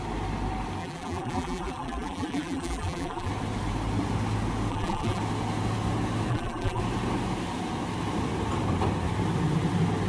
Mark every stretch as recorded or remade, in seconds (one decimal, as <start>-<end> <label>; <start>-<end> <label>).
0.0-0.8 recorded; 0.8-3.3 remade; 3.3-4.7 recorded; 4.7-5.2 remade; 5.2-6.3 recorded; 6.3-6.8 remade; 6.8-10.1 recorded